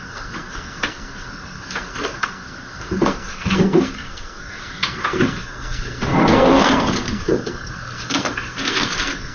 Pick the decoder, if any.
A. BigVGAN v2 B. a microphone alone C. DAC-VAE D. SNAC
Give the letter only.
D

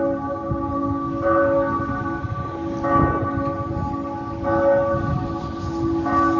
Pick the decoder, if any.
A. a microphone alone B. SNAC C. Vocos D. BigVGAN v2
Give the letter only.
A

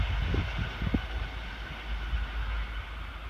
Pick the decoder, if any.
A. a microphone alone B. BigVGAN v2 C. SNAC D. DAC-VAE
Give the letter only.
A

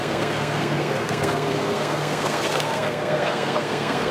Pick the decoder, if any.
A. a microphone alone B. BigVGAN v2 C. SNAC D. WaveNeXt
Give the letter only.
C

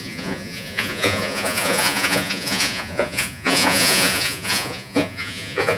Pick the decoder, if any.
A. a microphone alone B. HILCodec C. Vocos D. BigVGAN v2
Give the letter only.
C